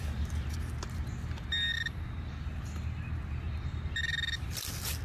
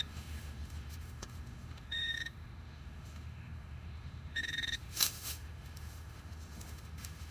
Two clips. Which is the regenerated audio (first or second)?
second